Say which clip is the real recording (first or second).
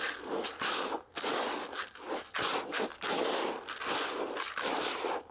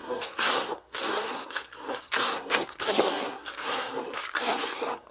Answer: first